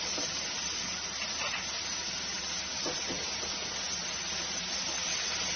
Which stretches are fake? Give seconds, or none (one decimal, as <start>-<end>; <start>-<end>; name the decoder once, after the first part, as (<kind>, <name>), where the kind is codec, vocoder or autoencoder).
none